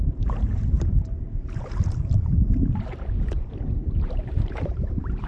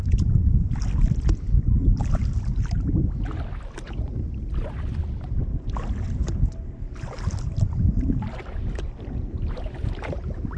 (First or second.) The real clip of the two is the second